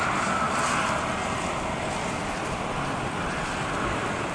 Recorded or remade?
recorded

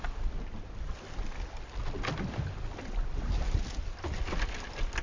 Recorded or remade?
recorded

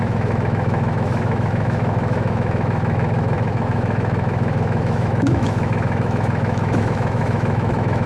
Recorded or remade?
remade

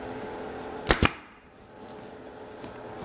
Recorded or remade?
recorded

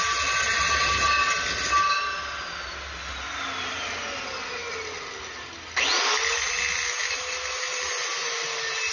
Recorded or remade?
recorded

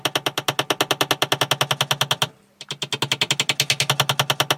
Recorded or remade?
recorded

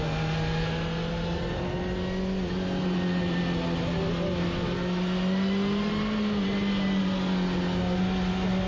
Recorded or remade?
recorded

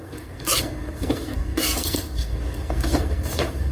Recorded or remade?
remade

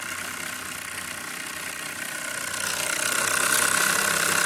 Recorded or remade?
recorded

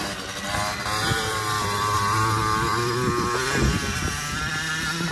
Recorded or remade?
recorded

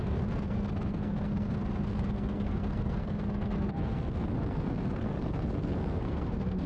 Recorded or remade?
remade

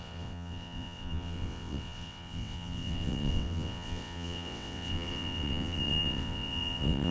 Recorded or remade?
remade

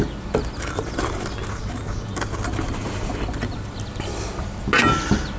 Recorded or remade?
recorded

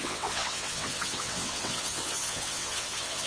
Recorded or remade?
remade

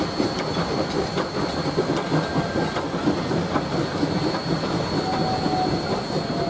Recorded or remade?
recorded